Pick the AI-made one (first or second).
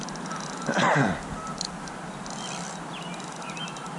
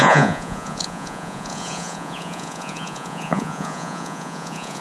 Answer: second